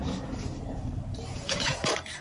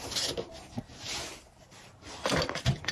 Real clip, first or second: second